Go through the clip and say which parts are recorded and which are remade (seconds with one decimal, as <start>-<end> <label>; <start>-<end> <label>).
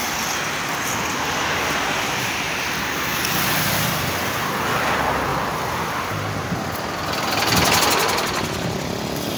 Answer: 0.0-9.4 recorded